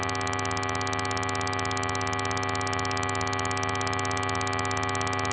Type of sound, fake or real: real